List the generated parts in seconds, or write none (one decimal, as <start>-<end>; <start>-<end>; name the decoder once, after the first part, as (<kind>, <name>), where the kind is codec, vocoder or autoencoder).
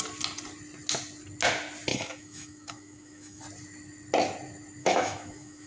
1.9-3.4 (autoencoder, DAC-VAE); 4.8-5.7